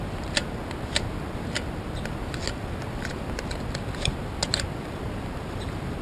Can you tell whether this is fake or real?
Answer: real